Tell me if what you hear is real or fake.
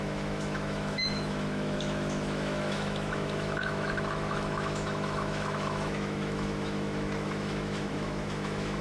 fake